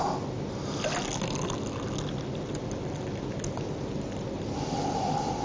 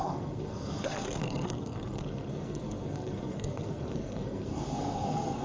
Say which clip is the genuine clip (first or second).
first